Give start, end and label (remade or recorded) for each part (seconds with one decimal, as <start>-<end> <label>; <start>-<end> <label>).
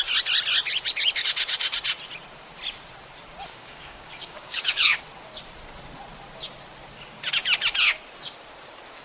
0.0-3.5 recorded; 3.5-5.0 remade; 5.0-9.0 recorded